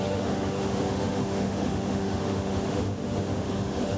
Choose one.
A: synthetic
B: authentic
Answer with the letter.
A